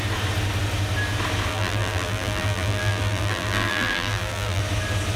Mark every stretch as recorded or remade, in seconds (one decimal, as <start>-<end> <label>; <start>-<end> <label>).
0.0-1.5 recorded; 1.5-4.6 remade; 4.6-5.2 recorded